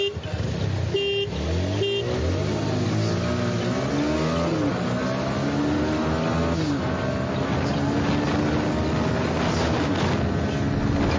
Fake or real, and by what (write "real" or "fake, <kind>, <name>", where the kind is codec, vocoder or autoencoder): real